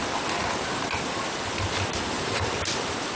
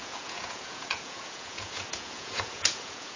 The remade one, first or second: second